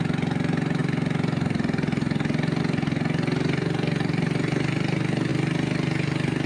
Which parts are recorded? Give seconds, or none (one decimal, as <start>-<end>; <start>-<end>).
0.0-6.5